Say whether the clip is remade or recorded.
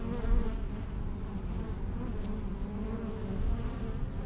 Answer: recorded